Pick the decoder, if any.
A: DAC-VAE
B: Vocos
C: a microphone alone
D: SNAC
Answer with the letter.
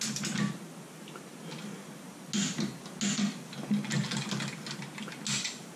C